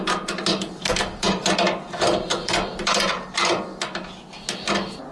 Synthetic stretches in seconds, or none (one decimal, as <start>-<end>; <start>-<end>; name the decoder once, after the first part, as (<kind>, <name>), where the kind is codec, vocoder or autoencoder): 0.5-3.6 (vocoder, BigVGAN v2)